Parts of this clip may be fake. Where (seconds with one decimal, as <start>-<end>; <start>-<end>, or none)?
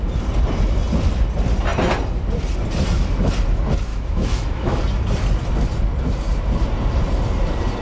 3.9-4.8